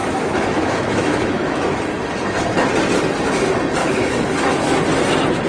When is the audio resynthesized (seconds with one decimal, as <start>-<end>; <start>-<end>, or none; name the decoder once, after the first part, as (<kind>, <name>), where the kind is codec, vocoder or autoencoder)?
0.0-1.8 (autoencoder, DAC-VAE); 3.8-4.8